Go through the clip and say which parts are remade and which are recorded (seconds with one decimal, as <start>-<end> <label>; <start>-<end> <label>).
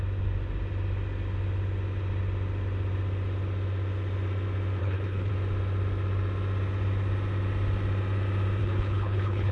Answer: 0.0-4.8 recorded; 4.8-5.3 remade; 5.3-8.6 recorded; 8.6-9.5 remade